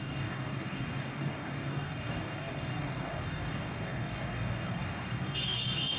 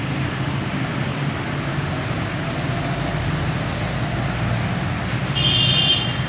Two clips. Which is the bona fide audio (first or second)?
second